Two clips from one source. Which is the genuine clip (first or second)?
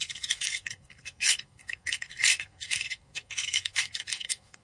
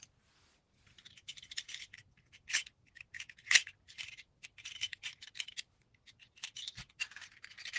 second